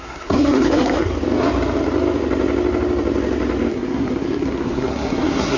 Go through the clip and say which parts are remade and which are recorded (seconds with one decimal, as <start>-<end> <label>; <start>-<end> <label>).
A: 0.0-1.1 remade; 1.1-3.7 recorded; 3.7-5.6 remade